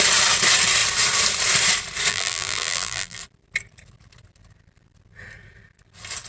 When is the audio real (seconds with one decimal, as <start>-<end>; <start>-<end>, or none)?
0.0-2.1; 3.2-6.3